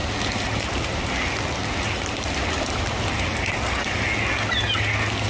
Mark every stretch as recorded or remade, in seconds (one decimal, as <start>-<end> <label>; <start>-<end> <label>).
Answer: 0.0-5.3 recorded